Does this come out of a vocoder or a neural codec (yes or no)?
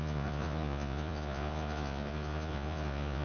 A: yes